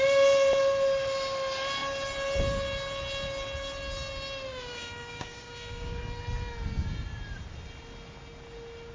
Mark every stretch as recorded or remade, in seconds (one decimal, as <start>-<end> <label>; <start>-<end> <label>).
0.0-4.5 recorded; 4.5-6.0 remade; 6.0-8.9 recorded